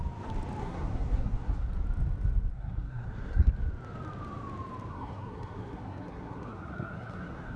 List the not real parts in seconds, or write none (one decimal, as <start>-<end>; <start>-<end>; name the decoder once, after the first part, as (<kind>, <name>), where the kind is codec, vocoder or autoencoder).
0.6-1.7 (codec, SNAC); 2.5-3.5; 4.9-7.6